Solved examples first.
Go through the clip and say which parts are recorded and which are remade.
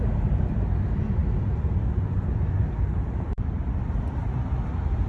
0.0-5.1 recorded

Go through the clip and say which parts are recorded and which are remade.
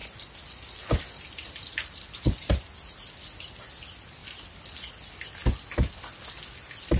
0.0-7.0 recorded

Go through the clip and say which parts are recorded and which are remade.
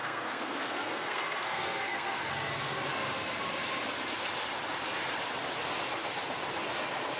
0.0-2.3 remade; 2.3-7.2 recorded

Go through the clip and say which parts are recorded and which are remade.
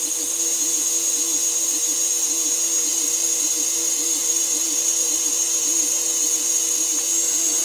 0.0-2.9 recorded; 2.9-6.8 remade; 6.8-7.6 recorded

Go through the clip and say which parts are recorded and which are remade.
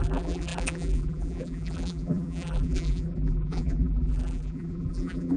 0.0-5.4 remade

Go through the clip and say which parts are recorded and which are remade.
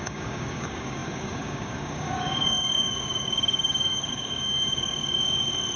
0.0-5.2 remade; 5.2-5.8 recorded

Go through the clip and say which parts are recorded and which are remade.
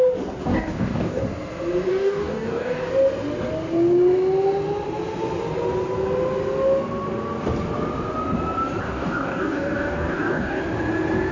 0.0-0.4 recorded; 0.4-1.2 remade; 1.2-1.9 recorded; 1.9-2.9 remade; 2.9-8.8 recorded; 8.8-10.6 remade; 10.6-11.3 recorded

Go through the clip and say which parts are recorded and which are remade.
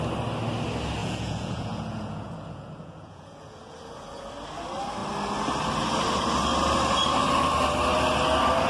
0.0-1.0 recorded; 1.0-4.3 remade; 4.3-8.7 recorded